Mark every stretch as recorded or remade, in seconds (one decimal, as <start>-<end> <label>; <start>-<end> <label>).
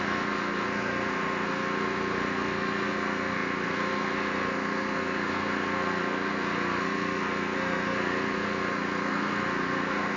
0.0-10.2 remade